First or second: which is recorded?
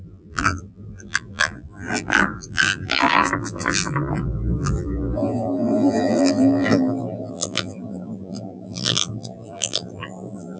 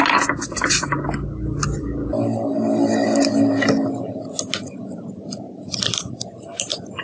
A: second